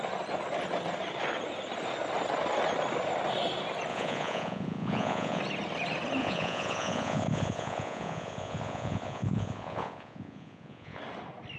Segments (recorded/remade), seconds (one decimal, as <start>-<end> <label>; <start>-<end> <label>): 0.0-3.9 recorded; 3.9-5.4 remade; 5.4-6.2 recorded; 6.2-11.0 remade; 11.0-11.6 recorded